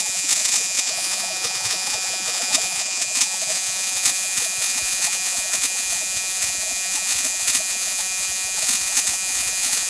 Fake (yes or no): yes